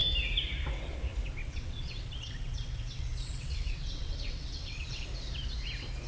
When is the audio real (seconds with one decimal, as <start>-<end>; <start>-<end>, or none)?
0.0-1.4; 5.1-6.1